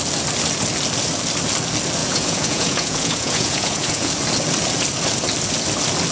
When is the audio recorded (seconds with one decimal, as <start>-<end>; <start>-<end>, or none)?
0.0-2.0; 4.1-6.1